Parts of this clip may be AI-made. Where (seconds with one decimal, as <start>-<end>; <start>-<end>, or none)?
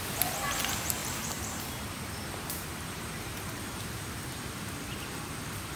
1.0-4.5